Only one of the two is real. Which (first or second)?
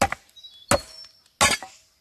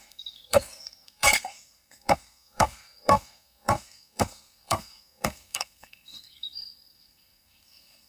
first